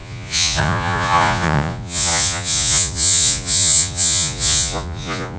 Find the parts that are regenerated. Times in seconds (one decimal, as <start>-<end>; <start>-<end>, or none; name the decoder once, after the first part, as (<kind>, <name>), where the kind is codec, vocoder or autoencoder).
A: 0.0-5.4 (vocoder, Vocos)